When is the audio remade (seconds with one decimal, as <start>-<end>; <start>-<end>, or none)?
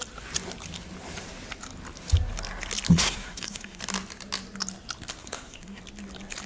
2.9-3.8; 5.2-5.8